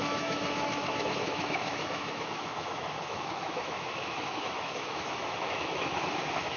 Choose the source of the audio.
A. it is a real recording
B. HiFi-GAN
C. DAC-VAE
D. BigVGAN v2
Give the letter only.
C